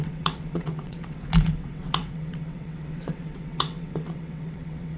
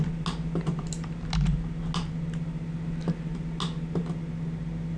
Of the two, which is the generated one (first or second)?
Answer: first